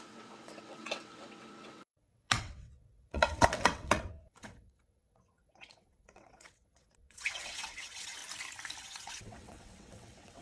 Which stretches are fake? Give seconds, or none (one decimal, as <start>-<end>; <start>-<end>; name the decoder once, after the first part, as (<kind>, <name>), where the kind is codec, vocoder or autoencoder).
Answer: 0.0-8.2 (vocoder, WaveNeXt); 8.8-10.4